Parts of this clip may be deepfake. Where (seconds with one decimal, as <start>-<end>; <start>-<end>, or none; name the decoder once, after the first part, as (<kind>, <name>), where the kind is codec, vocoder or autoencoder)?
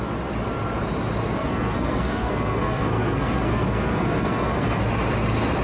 1.4-4.8 (codec, SNAC)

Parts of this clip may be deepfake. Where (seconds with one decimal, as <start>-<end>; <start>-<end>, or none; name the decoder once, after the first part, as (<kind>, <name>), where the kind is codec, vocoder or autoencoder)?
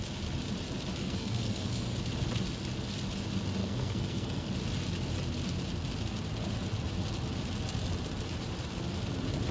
1.0-2.0 (codec, SNAC); 3.6-4.5